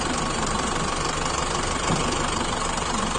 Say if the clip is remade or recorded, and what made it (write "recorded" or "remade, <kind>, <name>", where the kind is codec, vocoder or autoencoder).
remade, vocoder, BigVGAN v2